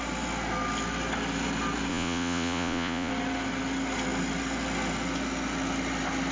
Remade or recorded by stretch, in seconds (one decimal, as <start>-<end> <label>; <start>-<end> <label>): 0.0-1.9 recorded; 1.9-3.1 remade; 3.1-6.3 recorded